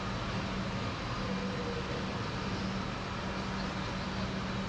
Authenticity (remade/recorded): recorded